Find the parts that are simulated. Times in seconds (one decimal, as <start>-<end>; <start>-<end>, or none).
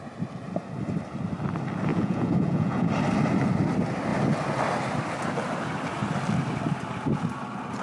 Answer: 1.9-2.9